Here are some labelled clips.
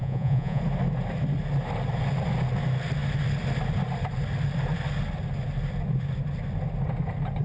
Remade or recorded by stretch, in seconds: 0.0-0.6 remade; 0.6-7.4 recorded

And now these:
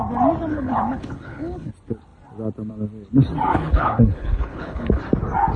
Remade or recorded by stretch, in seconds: 0.0-0.5 recorded; 0.5-1.7 remade; 1.7-3.5 recorded; 3.5-5.0 remade; 5.0-5.6 recorded

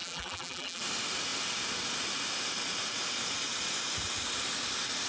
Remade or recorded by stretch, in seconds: 0.0-0.8 remade; 0.8-5.1 recorded

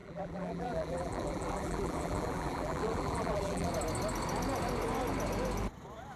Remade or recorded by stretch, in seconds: 0.0-3.7 remade; 3.7-6.2 recorded